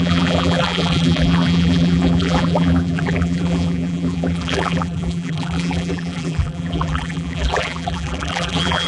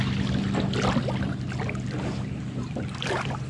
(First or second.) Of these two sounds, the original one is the second